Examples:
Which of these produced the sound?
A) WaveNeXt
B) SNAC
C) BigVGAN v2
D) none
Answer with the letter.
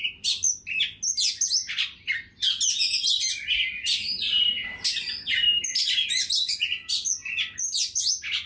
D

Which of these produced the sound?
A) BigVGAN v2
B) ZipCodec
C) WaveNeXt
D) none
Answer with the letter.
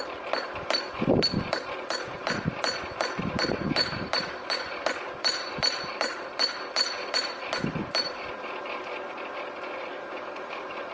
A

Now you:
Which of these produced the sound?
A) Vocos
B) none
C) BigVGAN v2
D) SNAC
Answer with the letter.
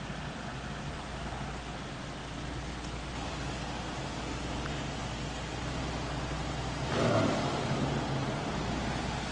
B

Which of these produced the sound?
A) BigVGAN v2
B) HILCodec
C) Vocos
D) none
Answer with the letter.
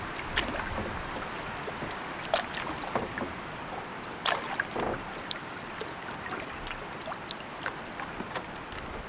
A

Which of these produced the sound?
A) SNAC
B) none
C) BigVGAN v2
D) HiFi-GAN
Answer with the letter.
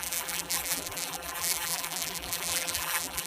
C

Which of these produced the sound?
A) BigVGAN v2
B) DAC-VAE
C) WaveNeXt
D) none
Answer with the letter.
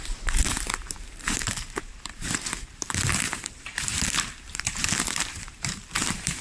A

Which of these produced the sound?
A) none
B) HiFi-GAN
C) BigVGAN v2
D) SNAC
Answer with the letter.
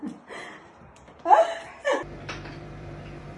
C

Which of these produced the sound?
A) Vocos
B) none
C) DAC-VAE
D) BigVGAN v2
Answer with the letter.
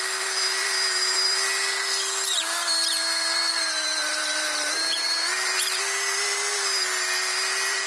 D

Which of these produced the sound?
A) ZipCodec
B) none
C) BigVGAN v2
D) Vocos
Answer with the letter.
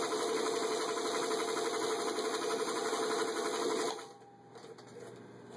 B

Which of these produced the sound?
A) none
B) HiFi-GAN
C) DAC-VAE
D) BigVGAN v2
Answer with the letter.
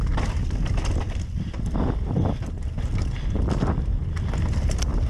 D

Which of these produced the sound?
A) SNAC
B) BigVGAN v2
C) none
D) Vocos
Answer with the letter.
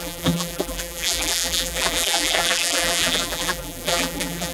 B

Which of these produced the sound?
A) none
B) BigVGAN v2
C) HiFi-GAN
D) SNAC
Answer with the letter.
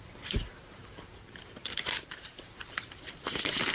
B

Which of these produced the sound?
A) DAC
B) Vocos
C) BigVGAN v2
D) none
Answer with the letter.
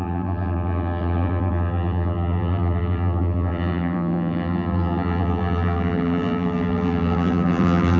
C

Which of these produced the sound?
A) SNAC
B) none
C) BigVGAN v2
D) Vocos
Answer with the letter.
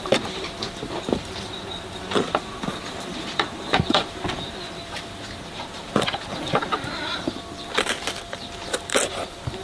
C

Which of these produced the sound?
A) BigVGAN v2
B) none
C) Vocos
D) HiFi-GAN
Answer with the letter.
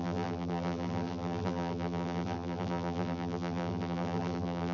A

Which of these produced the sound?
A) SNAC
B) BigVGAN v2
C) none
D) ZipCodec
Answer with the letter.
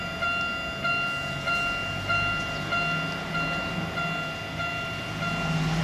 C